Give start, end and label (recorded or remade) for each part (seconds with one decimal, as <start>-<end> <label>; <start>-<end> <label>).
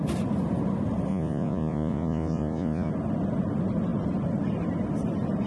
0.0-1.1 recorded; 1.1-2.9 remade; 2.9-5.5 recorded